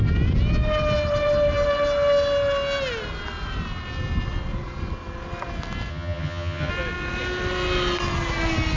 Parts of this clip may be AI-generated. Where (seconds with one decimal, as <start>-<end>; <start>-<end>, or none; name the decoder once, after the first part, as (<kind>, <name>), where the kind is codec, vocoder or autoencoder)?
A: 5.9-6.7 (vocoder, HiFi-GAN)